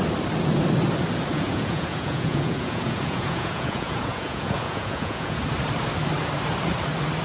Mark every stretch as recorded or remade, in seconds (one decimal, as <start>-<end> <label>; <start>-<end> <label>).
0.0-1.3 recorded; 1.3-5.4 remade; 5.4-7.2 recorded